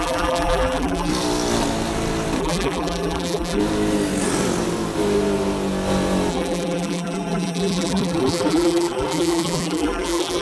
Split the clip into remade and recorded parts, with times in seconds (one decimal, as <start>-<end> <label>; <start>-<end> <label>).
0.0-1.1 remade; 1.1-2.4 recorded; 2.4-3.6 remade; 3.6-6.3 recorded; 6.3-10.4 remade